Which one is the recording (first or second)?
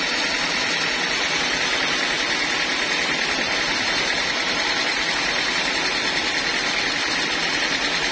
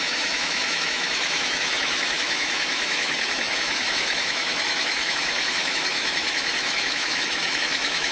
first